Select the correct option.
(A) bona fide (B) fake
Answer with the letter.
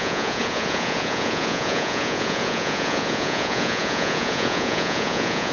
B